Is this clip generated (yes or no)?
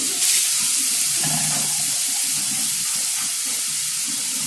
no